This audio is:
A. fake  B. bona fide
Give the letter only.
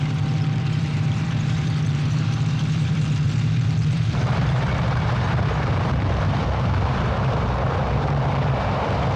A